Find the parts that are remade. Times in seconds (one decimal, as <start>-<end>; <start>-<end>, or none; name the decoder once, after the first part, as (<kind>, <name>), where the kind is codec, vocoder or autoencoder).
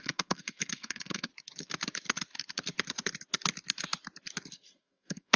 0.0-1.3 (codec, SNAC); 4.5-5.4